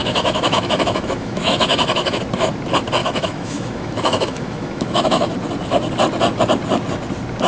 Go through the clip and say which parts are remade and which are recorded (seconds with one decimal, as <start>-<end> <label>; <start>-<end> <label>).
0.0-2.2 remade; 2.2-3.0 recorded; 3.0-5.3 remade; 5.3-7.5 recorded